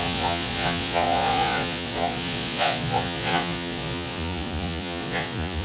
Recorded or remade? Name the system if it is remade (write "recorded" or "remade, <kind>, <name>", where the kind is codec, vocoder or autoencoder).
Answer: remade, vocoder, Vocos